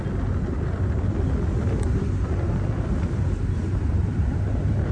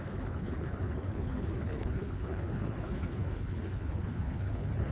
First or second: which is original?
first